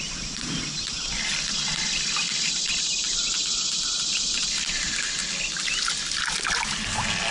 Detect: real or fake real